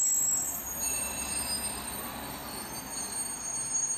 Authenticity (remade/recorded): recorded